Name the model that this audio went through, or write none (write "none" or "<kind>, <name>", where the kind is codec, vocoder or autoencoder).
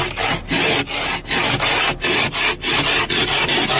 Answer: none